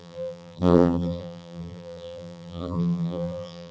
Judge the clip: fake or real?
fake